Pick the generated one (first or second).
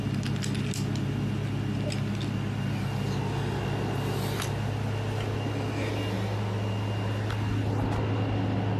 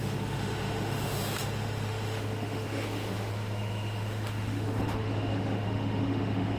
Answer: second